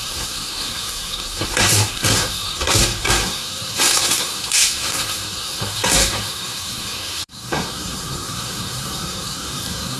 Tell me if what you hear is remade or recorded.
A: remade